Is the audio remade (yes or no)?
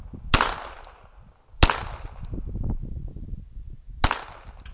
no